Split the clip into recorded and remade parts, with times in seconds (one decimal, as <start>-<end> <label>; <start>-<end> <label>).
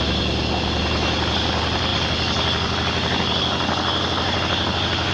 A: 0.0-5.1 recorded